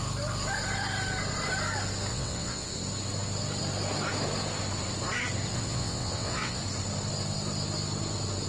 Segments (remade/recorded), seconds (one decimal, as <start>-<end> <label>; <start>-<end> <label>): 0.0-2.1 recorded; 2.1-2.7 remade; 2.7-5.5 recorded; 5.5-6.6 remade; 6.6-8.5 recorded